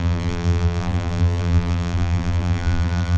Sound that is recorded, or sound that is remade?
remade